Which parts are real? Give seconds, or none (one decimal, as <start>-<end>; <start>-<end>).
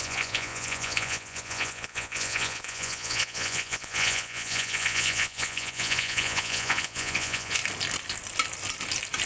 7.6-9.3